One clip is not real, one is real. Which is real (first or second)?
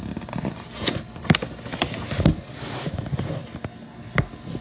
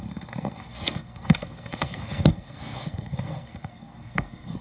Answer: first